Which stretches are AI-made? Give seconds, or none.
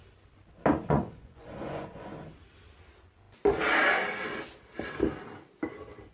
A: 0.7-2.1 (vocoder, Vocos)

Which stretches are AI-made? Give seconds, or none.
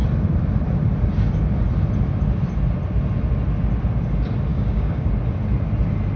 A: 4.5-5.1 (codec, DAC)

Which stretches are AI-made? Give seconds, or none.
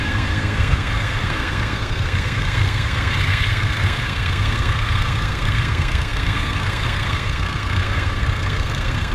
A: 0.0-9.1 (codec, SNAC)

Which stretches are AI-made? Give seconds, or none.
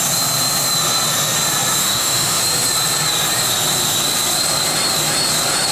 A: 1.8-2.4 (autoencoder, DAC-VAE)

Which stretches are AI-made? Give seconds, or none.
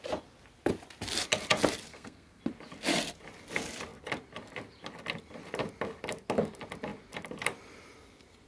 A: 1.9-2.4 (codec, SNAC)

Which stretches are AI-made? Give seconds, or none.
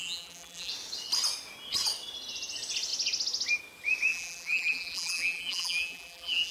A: 0.0-0.7 (vocoder, BigVGAN v2); 4.1-6.5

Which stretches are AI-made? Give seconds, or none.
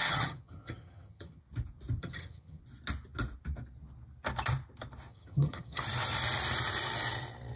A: 0.0-1.4 (vocoder, HiFi-GAN); 2.0-2.6; 5.1-5.8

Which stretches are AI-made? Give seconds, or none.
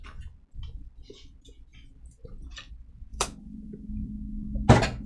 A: 3.1-3.7 (vocoder, BigVGAN v2)